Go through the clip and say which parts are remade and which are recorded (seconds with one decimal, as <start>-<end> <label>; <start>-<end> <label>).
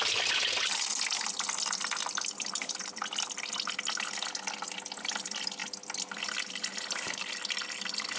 0.0-8.2 recorded